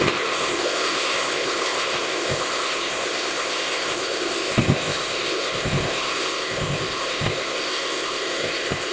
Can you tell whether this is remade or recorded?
remade